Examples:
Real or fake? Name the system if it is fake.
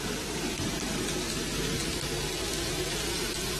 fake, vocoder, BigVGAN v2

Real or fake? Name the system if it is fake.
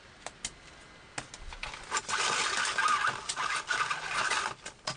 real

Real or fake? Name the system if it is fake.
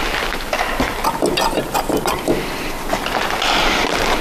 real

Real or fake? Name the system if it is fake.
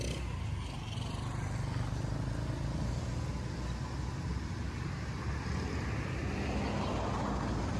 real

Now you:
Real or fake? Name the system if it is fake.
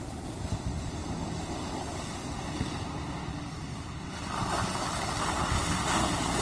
real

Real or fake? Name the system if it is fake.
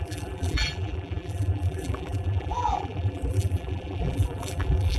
fake, vocoder, BigVGAN v2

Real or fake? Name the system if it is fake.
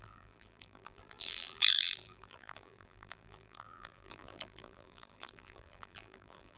fake, vocoder, BigVGAN v2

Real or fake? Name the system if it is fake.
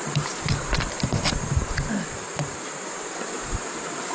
fake, vocoder, BigVGAN v2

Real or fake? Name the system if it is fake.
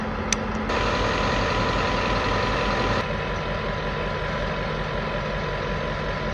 real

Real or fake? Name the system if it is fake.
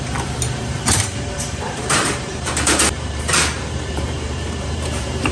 fake, vocoder, BigVGAN v2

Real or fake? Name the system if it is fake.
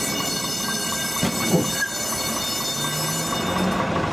real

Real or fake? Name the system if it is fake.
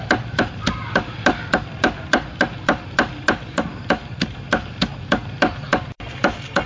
fake, vocoder, BigVGAN v2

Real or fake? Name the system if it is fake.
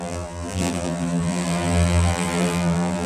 fake, vocoder, BigVGAN v2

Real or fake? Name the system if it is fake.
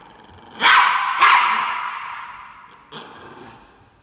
real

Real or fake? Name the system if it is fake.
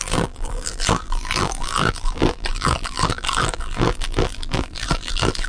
fake, vocoder, BigVGAN v2